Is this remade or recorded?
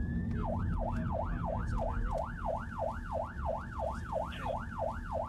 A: recorded